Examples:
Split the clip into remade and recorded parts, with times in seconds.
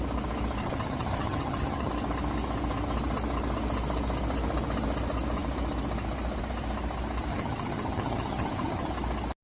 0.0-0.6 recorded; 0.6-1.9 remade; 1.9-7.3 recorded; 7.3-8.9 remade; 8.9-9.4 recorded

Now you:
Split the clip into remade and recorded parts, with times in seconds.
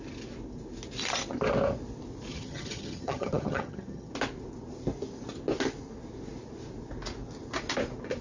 0.0-2.3 recorded; 2.3-4.1 remade; 4.1-8.2 recorded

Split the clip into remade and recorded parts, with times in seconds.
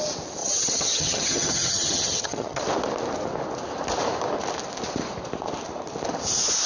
0.0-0.4 recorded; 0.4-2.6 remade; 2.6-6.7 recorded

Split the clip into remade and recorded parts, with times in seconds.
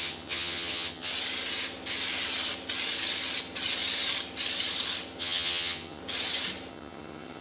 0.0-1.1 remade; 1.1-5.2 recorded; 5.2-6.0 remade; 6.0-6.7 recorded; 6.7-7.4 remade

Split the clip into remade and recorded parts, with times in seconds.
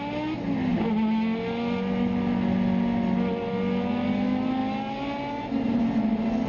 0.0-6.5 recorded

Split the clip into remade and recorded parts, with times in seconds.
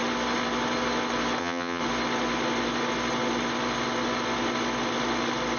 0.0-1.4 recorded; 1.4-1.8 remade; 1.8-5.6 recorded